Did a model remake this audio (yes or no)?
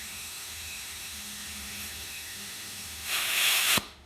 yes